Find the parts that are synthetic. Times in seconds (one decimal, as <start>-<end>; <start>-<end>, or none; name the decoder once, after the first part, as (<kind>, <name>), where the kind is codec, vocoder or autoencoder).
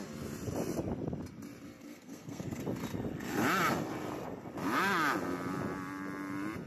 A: 1.8-2.6 (codec, SNAC)